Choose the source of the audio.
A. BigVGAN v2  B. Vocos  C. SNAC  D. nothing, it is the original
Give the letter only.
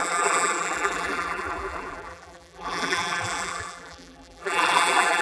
A